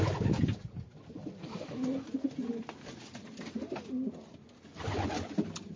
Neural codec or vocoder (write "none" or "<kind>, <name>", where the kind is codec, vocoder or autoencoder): none